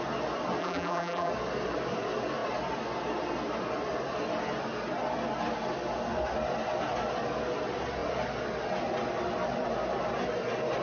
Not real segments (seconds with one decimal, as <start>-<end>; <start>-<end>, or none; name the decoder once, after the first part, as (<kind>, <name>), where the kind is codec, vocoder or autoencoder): 0.6-1.3 (vocoder, BigVGAN v2)